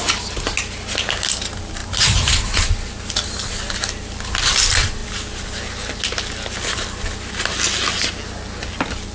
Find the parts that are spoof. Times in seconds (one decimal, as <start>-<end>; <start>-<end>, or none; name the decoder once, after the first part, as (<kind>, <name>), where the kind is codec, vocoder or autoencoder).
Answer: none